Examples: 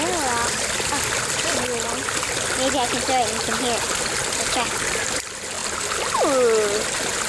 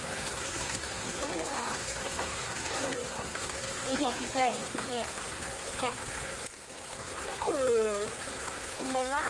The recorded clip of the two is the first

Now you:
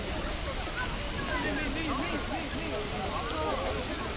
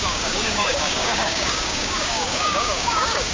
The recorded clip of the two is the first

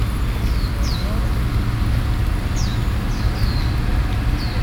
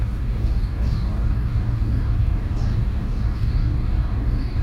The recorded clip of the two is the first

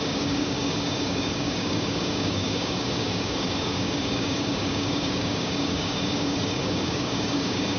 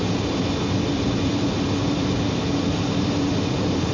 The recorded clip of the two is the second